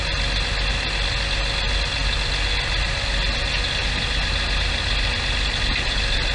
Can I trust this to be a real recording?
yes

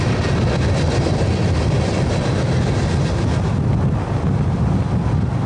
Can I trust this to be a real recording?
yes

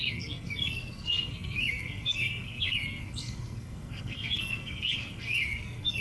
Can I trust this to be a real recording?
no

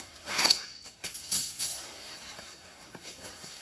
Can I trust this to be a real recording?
no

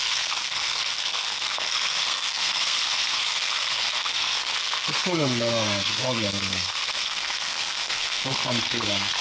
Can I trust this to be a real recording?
no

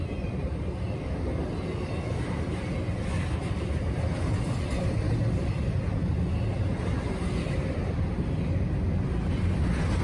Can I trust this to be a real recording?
yes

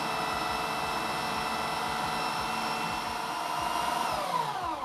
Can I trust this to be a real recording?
yes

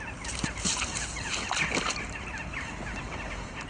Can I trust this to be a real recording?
yes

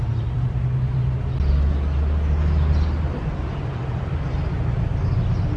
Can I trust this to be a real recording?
yes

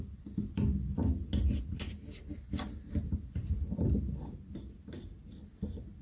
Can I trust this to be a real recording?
yes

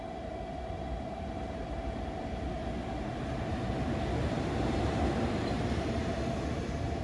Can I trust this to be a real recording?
yes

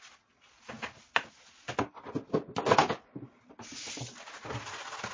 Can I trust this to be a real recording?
yes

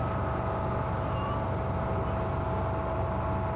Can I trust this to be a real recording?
yes